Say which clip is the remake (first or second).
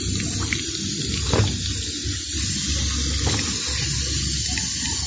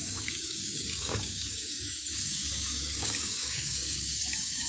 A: second